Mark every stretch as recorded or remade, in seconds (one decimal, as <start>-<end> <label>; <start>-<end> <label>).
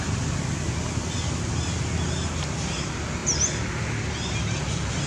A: 0.0-5.1 recorded